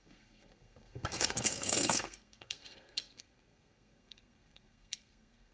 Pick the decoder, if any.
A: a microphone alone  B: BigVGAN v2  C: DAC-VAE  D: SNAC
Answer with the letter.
D